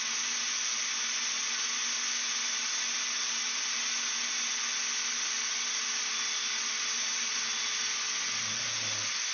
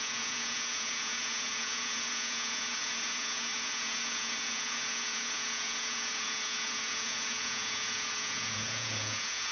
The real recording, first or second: first